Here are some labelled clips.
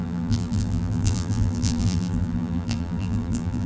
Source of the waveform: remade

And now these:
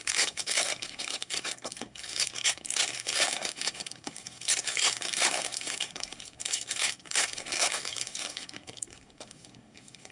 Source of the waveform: remade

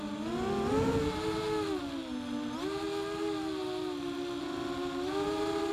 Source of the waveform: recorded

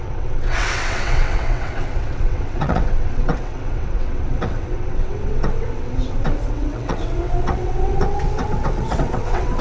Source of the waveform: remade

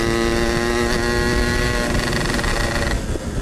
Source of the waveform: recorded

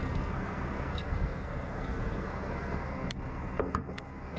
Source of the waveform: remade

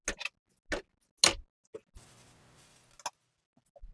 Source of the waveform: recorded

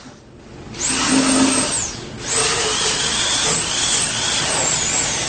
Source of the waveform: recorded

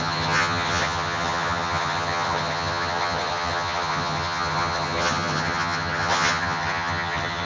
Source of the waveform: remade